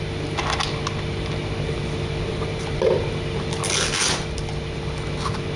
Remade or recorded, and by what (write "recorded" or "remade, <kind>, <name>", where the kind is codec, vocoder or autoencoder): recorded